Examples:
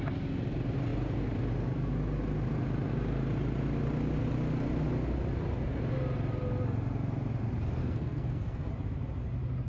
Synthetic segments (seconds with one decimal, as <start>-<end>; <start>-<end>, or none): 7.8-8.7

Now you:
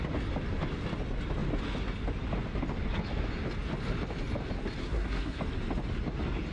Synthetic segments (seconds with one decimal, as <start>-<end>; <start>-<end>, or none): 4.8-5.4

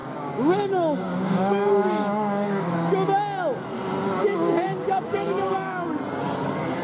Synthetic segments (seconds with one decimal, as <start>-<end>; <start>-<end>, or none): 0.0-2.7; 4.2-5.8